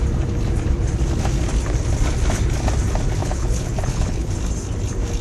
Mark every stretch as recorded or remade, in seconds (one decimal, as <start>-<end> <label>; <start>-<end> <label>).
0.0-3.2 recorded; 3.2-4.3 remade; 4.3-5.2 recorded

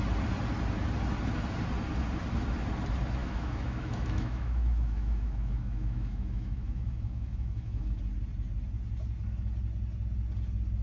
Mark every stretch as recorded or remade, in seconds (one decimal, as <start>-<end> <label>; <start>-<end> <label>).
0.0-3.2 recorded; 3.2-8.0 remade; 8.0-10.8 recorded

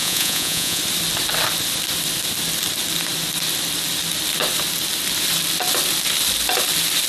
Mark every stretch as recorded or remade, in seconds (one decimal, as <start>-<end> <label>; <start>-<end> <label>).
0.0-0.8 remade; 0.8-7.1 recorded

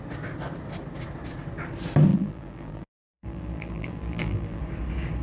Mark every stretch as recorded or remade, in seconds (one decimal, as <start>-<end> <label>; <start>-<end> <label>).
0.0-2.1 recorded; 2.1-4.6 remade; 4.6-5.2 recorded